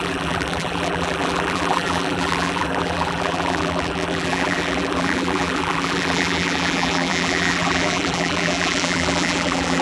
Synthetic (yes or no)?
yes